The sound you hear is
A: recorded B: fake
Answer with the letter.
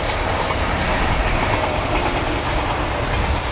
A